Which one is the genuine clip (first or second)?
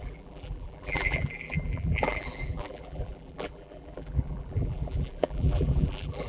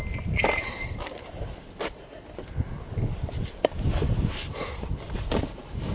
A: second